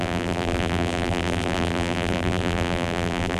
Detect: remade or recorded remade